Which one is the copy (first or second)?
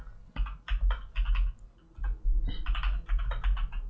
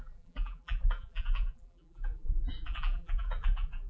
second